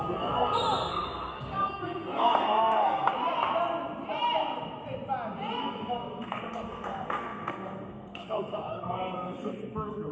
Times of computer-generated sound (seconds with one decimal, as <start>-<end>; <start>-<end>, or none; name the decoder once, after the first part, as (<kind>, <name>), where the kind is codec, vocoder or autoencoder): 0.0-3.1 (codec, SNAC); 5.6-10.1